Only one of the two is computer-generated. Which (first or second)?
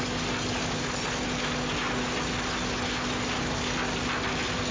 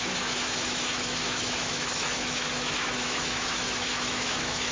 second